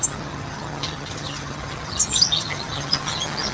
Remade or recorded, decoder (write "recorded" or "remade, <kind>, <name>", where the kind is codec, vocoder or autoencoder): remade, vocoder, HiFi-GAN